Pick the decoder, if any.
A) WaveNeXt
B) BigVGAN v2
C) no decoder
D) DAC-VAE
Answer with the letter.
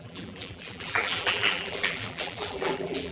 B